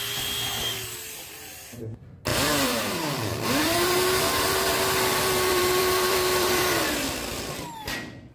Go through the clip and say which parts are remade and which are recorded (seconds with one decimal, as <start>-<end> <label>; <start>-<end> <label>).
0.0-2.3 recorded; 2.3-7.2 remade; 7.2-8.3 recorded

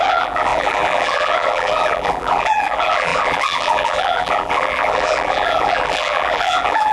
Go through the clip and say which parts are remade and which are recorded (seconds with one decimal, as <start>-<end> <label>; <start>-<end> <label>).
0.0-6.9 remade

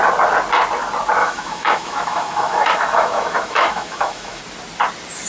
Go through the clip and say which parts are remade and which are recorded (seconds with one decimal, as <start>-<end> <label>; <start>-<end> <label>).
0.0-1.2 recorded; 1.2-4.4 remade; 4.4-5.3 recorded

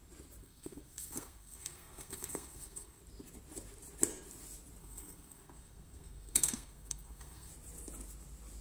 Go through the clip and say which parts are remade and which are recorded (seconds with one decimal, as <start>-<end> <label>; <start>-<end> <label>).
0.0-0.4 recorded; 0.4-3.0 remade; 3.0-4.8 recorded; 4.8-7.5 remade; 7.5-8.6 recorded

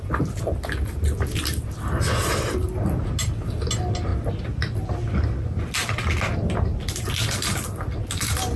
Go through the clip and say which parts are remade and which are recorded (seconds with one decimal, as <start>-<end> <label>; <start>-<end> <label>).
0.0-8.6 recorded